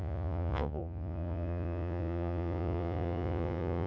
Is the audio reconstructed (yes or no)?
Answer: yes